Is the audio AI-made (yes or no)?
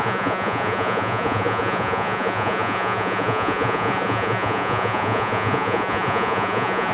yes